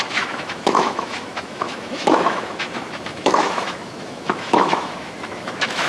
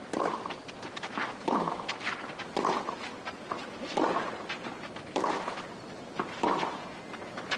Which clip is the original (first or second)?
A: second